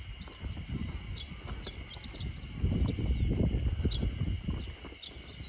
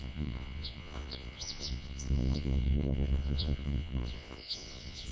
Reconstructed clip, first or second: second